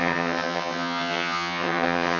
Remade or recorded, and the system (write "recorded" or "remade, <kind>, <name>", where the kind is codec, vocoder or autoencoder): remade, vocoder, HiFi-GAN